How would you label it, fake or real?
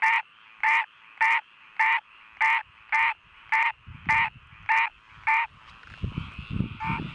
real